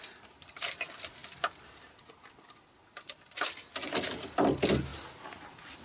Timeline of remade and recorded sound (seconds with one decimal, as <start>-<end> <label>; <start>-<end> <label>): 0.0-4.9 remade; 4.9-5.8 recorded